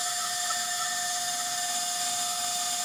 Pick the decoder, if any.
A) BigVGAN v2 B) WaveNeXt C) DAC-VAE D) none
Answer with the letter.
C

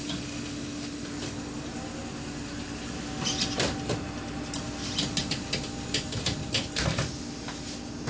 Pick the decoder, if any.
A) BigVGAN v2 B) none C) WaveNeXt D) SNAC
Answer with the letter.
B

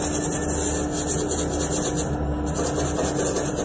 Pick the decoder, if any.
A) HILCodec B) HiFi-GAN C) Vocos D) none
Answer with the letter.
D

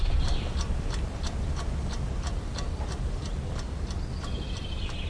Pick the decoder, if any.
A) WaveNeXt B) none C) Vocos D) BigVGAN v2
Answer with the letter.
D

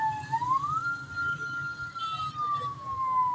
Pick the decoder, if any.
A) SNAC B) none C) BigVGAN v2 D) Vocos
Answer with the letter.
B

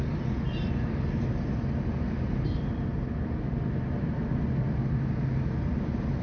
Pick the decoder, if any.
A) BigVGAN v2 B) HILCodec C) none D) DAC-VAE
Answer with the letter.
C